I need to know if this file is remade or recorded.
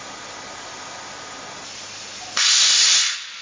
recorded